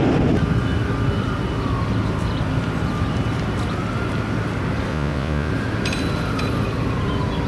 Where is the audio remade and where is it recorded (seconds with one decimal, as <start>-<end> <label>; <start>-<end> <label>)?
0.0-4.9 recorded; 4.9-5.5 remade; 5.5-7.5 recorded